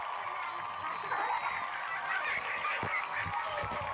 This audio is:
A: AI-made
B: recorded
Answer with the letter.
B